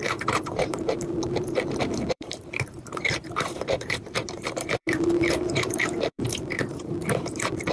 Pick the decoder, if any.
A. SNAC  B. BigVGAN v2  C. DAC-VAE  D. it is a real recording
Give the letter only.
B